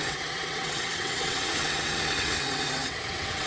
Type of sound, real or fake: fake